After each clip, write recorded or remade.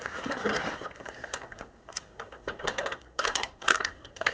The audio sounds remade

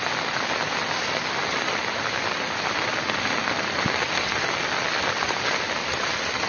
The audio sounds recorded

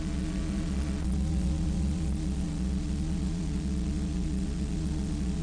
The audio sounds remade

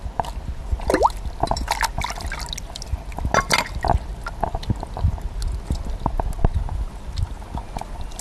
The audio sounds recorded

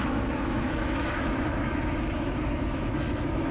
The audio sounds remade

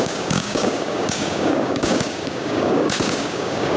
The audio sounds remade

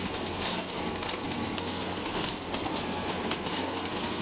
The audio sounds remade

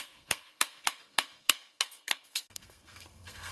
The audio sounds remade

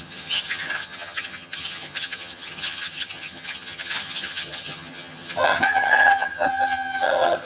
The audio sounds remade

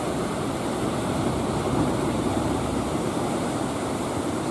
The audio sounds remade